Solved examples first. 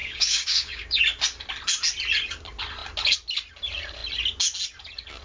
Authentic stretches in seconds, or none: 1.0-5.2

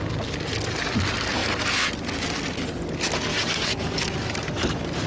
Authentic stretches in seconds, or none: 0.0-3.3; 4.1-5.1